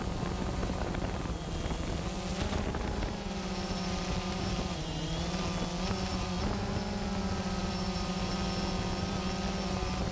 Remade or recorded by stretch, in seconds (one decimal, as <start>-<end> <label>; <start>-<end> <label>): 0.0-0.6 recorded; 0.6-1.5 remade; 1.5-2.3 recorded; 2.3-5.4 remade; 5.4-7.6 recorded; 7.6-8.3 remade; 8.3-10.1 recorded